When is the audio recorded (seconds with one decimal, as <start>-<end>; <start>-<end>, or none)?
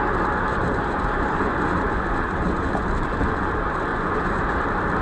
0.0-0.5; 3.5-3.9; 4.4-5.0